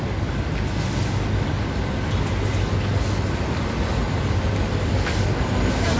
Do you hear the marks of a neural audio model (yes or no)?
no